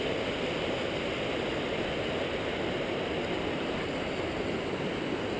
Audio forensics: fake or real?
real